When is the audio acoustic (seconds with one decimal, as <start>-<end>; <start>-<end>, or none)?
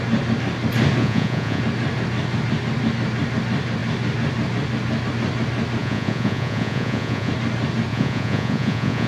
0.0-1.0; 1.6-5.8; 7.3-7.9